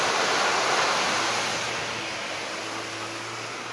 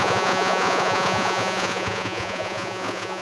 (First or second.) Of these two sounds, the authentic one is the first